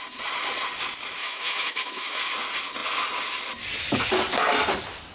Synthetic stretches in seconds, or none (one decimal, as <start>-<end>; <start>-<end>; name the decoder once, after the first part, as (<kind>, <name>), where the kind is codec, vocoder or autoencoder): 1.2-2.2 (autoencoder, DAC-VAE)